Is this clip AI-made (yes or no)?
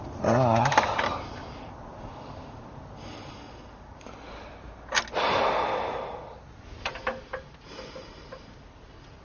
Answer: no